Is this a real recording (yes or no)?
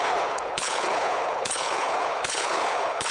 no